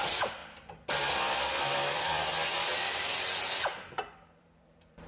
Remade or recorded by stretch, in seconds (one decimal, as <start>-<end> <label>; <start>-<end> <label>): 0.0-0.4 remade; 0.4-1.7 recorded; 1.7-2.1 remade; 2.1-4.4 recorded; 4.4-5.1 remade